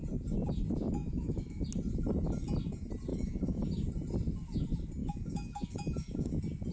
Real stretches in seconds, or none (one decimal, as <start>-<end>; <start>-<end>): 0.0-1.0; 1.6-3.1; 3.6-5.0; 6.3-6.7